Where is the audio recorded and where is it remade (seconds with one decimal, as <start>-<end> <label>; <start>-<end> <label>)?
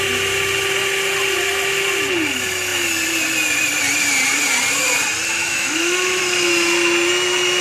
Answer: 0.0-5.4 recorded; 5.4-6.2 remade; 6.2-7.6 recorded